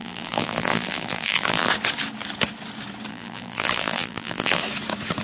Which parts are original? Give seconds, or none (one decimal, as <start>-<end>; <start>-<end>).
1.7-3.1; 4.6-5.2